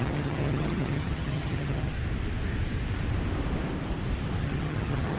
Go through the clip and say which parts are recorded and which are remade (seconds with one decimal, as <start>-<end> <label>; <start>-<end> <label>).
0.0-1.9 remade; 1.9-4.4 recorded; 4.4-5.2 remade